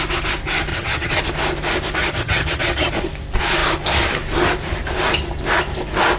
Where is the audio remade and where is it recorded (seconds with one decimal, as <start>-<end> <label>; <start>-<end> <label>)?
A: 0.0-0.7 recorded; 0.7-1.2 remade; 1.2-2.0 recorded; 2.0-2.9 remade; 2.9-6.2 recorded